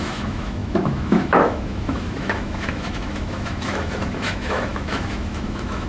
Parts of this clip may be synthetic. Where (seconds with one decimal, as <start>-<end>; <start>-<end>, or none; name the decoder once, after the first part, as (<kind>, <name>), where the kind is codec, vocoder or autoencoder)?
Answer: 0.0-5.9 (autoencoder, DAC-VAE)